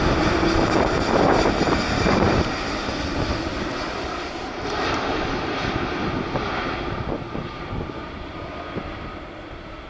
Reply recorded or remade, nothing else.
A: remade